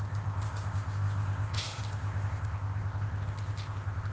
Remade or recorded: remade